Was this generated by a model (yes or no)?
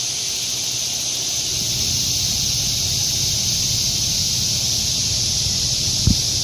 no